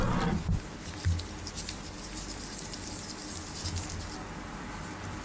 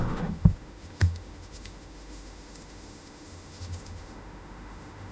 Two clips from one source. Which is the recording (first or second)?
first